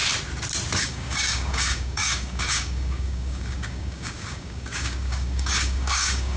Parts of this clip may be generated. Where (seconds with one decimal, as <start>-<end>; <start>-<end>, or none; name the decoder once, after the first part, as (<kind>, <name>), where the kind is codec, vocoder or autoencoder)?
0.8-6.4 (codec, DAC)